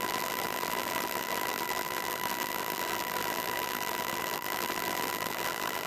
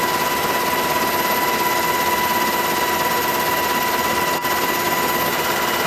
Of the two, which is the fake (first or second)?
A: first